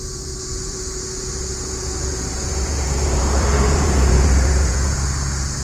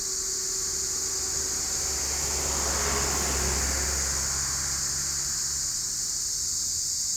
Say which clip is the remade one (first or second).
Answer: first